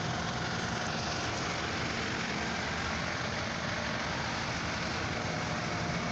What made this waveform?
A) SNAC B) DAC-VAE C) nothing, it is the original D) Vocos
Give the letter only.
C